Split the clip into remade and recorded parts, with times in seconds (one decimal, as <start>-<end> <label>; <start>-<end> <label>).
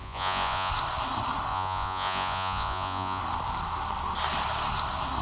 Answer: 0.0-0.7 remade; 0.7-1.5 recorded; 1.5-3.2 remade; 3.2-5.2 recorded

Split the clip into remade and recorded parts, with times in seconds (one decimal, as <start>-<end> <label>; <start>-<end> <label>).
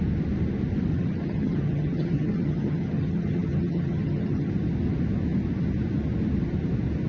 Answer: 0.0-0.9 recorded; 0.9-4.5 remade; 4.5-7.1 recorded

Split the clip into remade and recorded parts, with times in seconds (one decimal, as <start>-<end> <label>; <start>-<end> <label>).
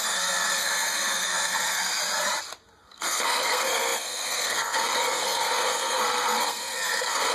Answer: 0.0-2.0 remade; 2.0-2.8 recorded; 2.8-7.3 remade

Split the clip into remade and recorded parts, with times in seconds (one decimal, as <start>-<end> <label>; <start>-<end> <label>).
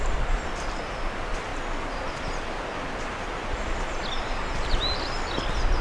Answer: 0.0-5.8 recorded